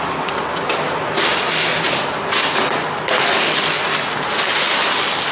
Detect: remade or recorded recorded